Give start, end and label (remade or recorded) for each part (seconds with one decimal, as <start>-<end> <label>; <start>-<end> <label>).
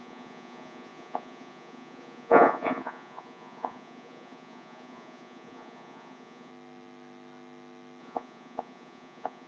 0.0-6.5 remade; 6.5-8.0 recorded; 8.0-9.5 remade